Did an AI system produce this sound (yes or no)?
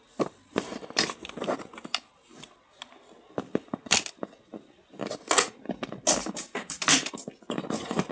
no